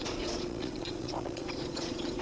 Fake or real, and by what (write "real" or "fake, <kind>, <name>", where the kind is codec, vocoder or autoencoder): fake, vocoder, Vocos